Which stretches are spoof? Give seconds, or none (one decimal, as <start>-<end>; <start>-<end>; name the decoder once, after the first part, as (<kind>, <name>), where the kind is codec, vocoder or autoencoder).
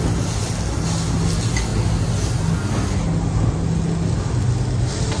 none